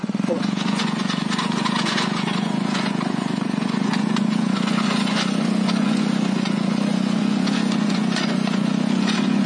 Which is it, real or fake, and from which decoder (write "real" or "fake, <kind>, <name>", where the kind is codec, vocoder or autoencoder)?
fake, vocoder, Vocos